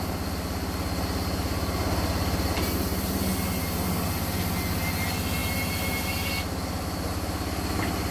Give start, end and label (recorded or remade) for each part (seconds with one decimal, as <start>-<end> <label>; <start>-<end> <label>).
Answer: 0.0-8.1 recorded

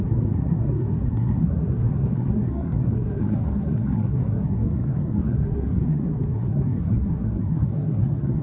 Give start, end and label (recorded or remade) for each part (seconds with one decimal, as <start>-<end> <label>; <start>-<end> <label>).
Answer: 0.0-8.4 remade

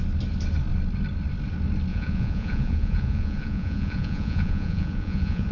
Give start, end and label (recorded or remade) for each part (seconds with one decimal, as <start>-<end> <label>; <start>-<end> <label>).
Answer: 0.0-1.9 recorded; 1.9-5.5 remade

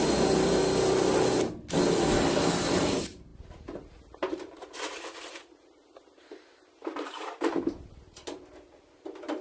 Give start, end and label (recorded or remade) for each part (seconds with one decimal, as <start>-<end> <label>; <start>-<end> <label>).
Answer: 0.0-0.6 remade; 0.6-2.5 recorded; 2.5-9.4 remade

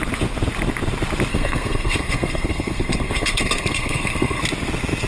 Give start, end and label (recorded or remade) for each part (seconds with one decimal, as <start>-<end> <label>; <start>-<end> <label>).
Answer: 0.0-1.3 recorded; 1.3-4.4 remade; 4.4-5.1 recorded

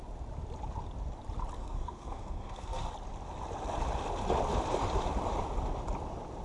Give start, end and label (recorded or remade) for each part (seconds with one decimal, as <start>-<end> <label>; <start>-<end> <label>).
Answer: 0.0-1.6 recorded; 1.6-2.9 remade; 2.9-6.4 recorded

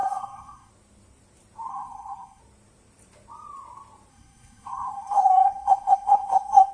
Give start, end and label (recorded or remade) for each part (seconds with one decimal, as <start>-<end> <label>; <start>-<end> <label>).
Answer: 0.0-0.7 remade; 0.7-1.7 recorded; 1.7-2.4 remade; 2.4-4.1 recorded; 4.1-6.7 remade

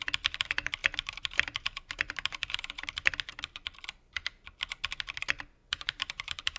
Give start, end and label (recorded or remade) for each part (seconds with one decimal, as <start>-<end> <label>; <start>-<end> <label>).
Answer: 0.0-0.8 recorded; 0.8-3.1 remade; 3.1-5.6 recorded; 5.6-6.6 remade